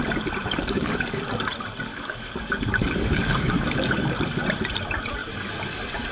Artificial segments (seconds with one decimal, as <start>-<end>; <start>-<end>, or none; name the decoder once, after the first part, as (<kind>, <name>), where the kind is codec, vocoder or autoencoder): 0.4-1.2 (codec, DAC); 1.9-4.1